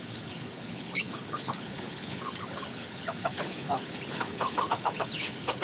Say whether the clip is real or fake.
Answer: fake